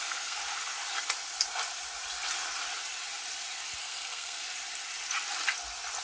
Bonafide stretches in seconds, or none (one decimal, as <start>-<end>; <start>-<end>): 0.4-3.8; 4.4-6.0